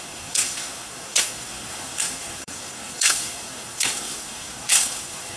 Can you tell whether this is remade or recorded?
remade